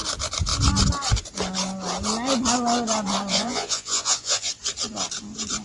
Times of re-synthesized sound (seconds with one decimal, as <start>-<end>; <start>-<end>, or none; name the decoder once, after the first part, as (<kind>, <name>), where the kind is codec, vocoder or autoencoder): 3.3-4.5 (vocoder, Vocos)